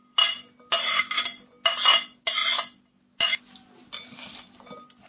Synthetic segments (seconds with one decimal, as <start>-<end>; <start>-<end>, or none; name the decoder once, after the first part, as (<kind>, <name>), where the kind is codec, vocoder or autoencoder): none